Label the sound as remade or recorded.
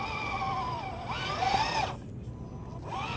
recorded